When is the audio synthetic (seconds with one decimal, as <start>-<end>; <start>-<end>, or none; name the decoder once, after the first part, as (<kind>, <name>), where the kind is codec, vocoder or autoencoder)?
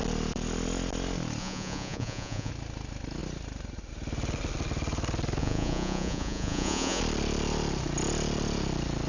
1.4-2.5 (vocoder, Vocos); 5.4-7.0